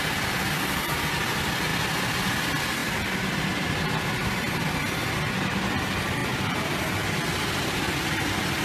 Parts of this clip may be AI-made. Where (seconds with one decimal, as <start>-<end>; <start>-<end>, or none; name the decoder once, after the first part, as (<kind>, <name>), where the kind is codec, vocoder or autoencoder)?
2.8-5.0 (vocoder, BigVGAN v2); 6.2-6.8